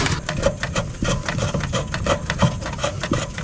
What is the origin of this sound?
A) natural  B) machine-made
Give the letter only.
B